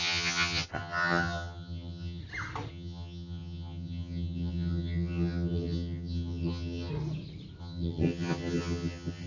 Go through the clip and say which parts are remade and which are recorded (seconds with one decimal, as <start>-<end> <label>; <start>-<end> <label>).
0.0-2.2 remade; 2.2-2.7 recorded; 2.7-6.9 remade; 6.9-7.6 recorded; 7.6-9.3 remade

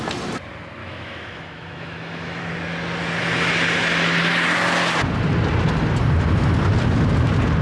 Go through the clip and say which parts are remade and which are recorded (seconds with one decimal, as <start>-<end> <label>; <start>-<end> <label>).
0.0-0.8 recorded; 0.8-2.4 remade; 2.4-7.6 recorded

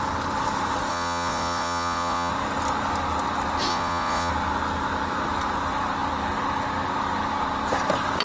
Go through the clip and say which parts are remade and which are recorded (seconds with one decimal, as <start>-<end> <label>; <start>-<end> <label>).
0.0-0.9 recorded; 0.9-2.3 remade; 2.3-3.7 recorded; 3.7-4.3 remade; 4.3-8.2 recorded

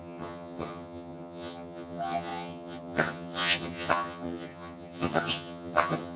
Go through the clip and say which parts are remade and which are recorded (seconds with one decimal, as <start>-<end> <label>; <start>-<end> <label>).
0.0-6.2 remade